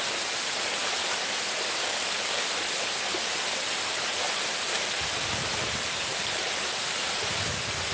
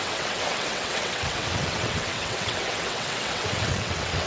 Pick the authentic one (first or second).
first